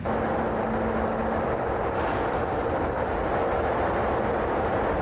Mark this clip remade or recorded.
recorded